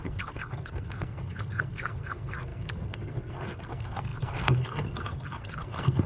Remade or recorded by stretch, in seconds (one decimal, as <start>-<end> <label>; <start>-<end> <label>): 0.0-6.1 remade